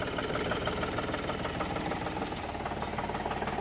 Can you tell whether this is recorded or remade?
recorded